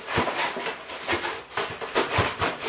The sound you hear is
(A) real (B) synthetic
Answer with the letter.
A